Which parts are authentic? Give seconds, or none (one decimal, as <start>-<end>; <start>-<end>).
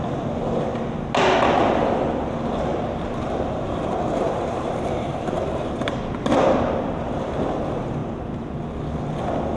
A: 0.0-2.7; 7.6-8.0; 8.6-9.6